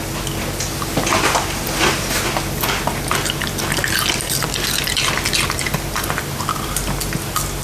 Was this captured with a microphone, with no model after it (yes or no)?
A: yes